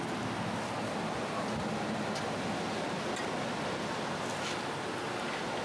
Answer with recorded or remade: recorded